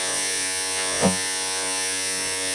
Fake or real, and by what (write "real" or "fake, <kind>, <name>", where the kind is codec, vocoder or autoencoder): fake, vocoder, Vocos